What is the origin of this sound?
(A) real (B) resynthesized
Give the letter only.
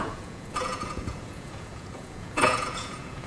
B